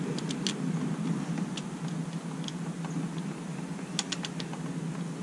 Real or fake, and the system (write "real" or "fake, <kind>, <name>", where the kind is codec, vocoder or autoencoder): real